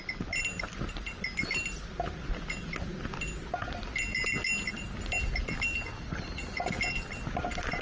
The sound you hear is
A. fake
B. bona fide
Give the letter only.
B